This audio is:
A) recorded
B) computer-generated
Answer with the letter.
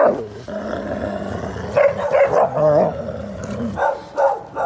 A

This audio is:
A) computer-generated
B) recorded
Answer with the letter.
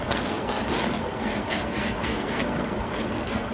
A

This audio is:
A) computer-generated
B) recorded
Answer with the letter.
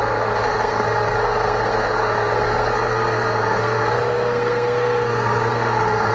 A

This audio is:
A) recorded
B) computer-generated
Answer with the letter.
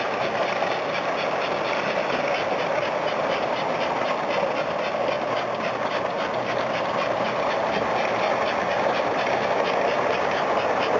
A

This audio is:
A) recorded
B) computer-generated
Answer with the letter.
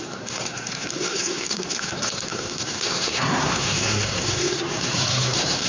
B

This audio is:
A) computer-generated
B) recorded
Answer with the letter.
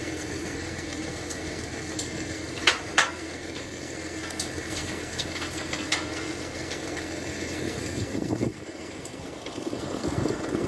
A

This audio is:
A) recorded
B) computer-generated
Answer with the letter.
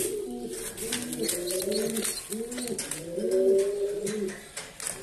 A